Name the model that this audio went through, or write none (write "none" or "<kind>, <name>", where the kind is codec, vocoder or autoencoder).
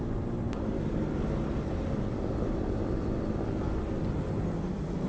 none